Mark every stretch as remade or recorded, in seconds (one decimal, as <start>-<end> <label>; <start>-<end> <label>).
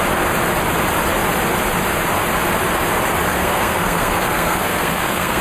0.0-3.3 recorded; 3.3-5.4 remade